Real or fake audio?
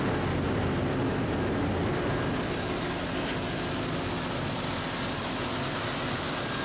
real